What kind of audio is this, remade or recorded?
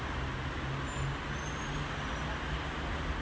recorded